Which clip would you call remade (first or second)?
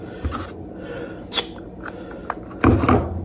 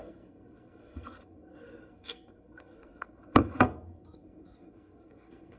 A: second